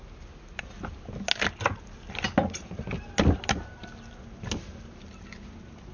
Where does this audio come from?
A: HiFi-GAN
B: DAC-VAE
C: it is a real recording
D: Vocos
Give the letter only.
C